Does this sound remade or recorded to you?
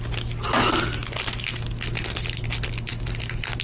recorded